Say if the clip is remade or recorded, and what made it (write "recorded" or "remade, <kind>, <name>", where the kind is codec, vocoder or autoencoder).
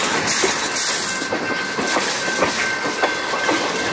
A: recorded